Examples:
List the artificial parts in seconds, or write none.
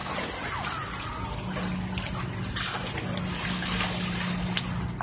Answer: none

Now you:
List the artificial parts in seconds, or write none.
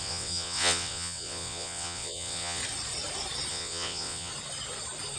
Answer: 0.0-2.6 (vocoder, WaveNeXt); 3.5-4.3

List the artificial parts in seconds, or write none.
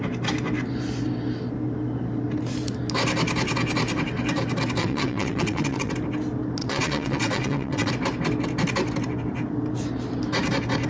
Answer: 4.8-5.9 (vocoder, WaveNeXt); 6.6-7.9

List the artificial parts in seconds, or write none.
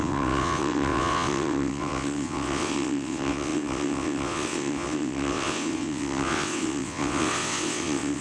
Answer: 0.0-8.2 (vocoder, WaveNeXt)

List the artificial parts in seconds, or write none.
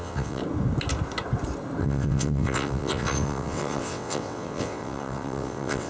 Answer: 0.0-0.4 (vocoder, WaveNeXt); 1.8-5.9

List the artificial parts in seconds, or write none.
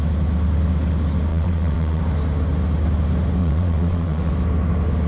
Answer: 1.3-2.0 (vocoder, WaveNeXt); 3.4-4.3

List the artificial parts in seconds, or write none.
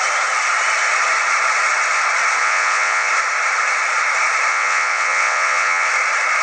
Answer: 2.4-3.1 (vocoder, WaveNeXt); 4.5-5.9